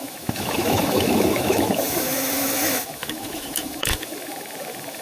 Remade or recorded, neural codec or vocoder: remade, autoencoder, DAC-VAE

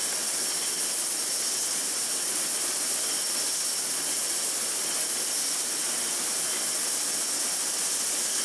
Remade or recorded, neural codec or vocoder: recorded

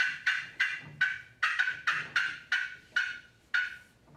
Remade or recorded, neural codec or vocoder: recorded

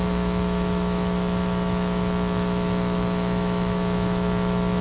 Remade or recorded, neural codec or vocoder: remade, autoencoder, DAC-VAE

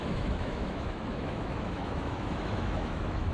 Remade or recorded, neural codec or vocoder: remade, autoencoder, DAC-VAE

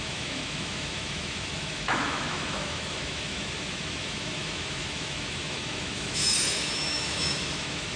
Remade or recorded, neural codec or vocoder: remade, autoencoder, DAC-VAE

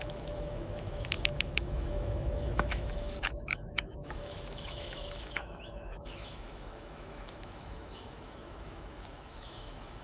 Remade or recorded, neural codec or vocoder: remade, autoencoder, DAC-VAE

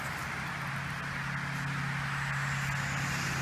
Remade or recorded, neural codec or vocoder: recorded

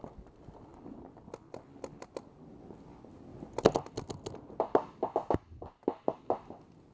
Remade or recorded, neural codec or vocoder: recorded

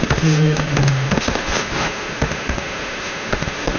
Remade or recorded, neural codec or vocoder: remade, autoencoder, DAC-VAE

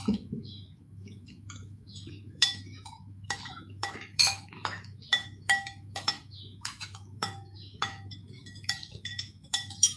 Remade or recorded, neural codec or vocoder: remade, autoencoder, DAC-VAE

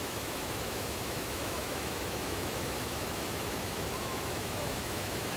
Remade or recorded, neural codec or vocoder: remade, autoencoder, DAC-VAE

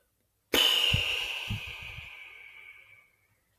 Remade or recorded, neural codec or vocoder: recorded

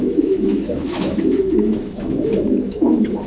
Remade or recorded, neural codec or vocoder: remade, autoencoder, DAC-VAE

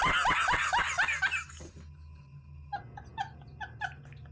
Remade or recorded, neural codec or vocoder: recorded